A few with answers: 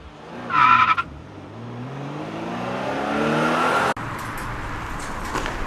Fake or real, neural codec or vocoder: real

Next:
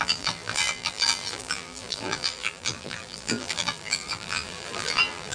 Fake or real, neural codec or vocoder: fake, vocoder, BigVGAN v2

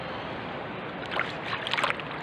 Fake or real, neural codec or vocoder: real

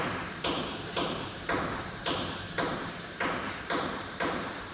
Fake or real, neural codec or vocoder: fake, vocoder, BigVGAN v2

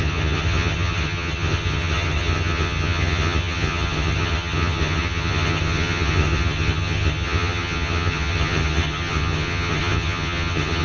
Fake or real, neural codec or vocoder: fake, vocoder, HiFi-GAN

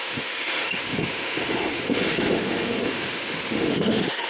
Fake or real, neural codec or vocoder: fake, autoencoder, DAC-VAE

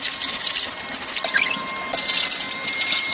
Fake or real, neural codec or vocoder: real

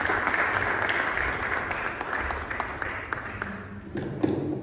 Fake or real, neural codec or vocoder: real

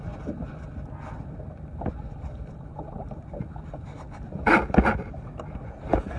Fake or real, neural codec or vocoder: real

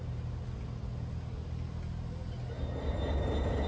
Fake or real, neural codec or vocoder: real